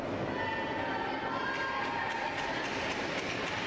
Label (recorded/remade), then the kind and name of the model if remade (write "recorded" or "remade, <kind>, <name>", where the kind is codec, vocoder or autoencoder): recorded